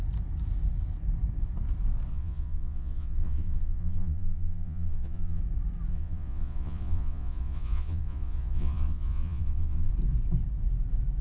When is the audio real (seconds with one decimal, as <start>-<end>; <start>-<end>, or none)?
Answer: 0.0-2.1; 5.4-5.9; 9.9-11.2